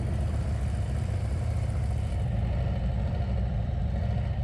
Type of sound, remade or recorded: remade